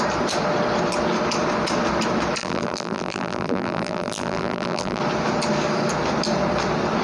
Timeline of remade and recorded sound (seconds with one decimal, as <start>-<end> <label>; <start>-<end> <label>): 0.0-2.4 recorded; 2.4-5.0 remade; 5.0-7.0 recorded